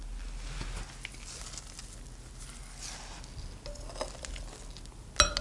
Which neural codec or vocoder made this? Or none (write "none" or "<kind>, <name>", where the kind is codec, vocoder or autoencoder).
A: none